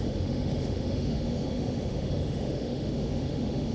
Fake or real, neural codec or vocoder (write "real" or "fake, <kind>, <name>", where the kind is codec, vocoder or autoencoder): fake, autoencoder, DAC-VAE